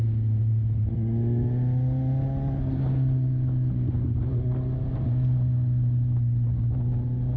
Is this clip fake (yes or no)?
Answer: no